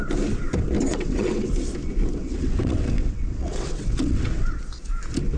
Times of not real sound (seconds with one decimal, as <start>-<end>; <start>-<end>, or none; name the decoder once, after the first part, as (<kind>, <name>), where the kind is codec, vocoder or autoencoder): 0.9-1.5 (vocoder, WaveNeXt); 2.2-4.6